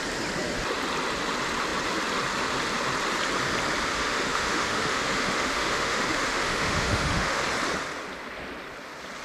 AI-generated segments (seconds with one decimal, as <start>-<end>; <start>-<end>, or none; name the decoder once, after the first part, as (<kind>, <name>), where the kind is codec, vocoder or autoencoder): 3.9-7.4 (autoencoder, DAC-VAE)